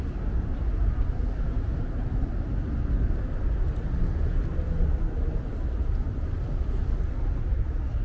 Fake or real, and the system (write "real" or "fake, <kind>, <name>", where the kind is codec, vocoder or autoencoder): real